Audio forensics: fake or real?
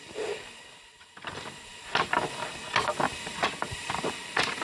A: real